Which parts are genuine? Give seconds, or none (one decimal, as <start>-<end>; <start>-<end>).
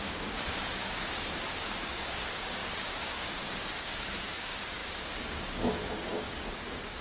none